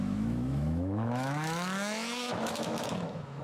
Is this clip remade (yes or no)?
yes